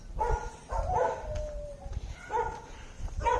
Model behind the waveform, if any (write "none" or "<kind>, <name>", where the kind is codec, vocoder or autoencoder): none